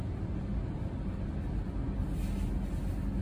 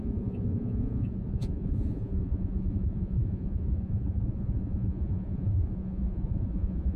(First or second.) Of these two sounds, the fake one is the second